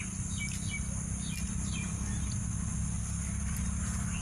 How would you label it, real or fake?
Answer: real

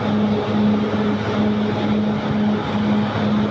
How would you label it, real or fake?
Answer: real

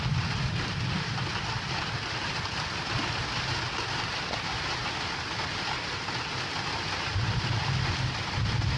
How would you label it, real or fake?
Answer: real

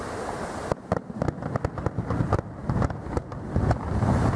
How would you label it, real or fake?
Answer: real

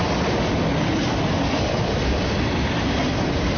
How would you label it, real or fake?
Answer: real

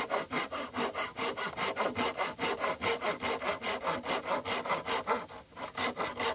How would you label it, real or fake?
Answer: real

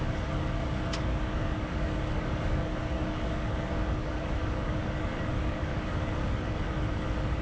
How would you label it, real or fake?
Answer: fake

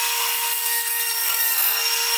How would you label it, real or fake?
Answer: fake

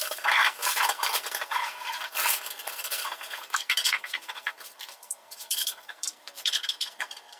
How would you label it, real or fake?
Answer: fake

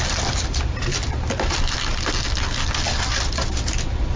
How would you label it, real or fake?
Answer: real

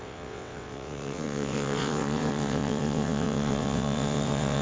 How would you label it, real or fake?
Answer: fake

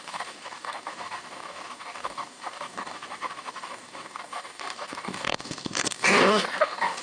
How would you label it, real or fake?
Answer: fake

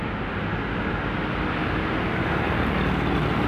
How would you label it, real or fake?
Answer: real